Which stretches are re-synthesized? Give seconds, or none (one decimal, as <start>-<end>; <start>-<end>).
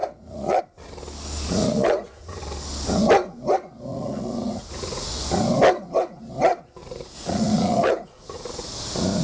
0.0-0.6; 1.6-2.4; 3.9-5.2; 6.8-8.5